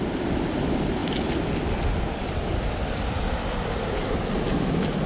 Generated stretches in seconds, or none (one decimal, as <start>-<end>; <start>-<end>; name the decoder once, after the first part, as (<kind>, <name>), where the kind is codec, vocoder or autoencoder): none